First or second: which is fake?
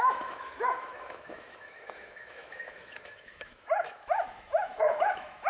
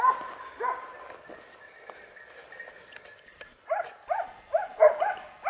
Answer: first